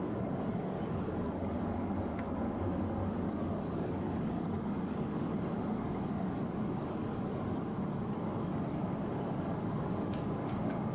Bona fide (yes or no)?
no